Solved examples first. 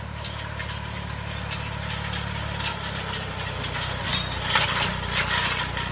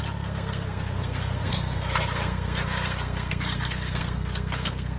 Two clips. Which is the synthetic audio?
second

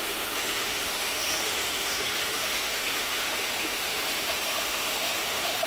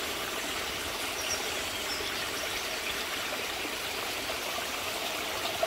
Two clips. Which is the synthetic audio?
first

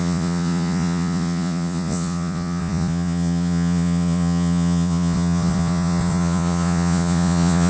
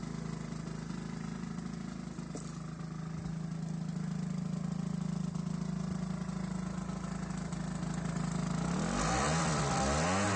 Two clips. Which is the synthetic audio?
first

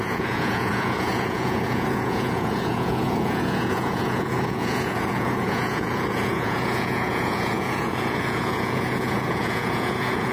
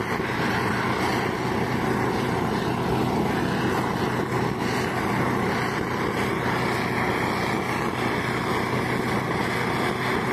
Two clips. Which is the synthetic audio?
first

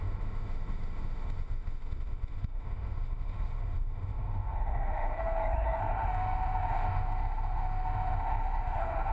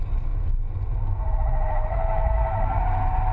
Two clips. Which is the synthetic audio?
first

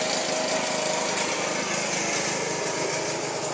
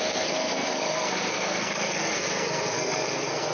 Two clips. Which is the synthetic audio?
second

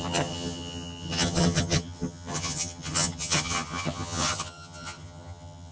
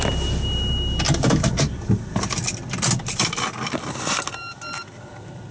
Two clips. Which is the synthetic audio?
first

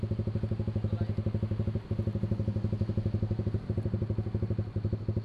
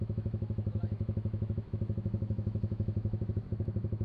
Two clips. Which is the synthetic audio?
second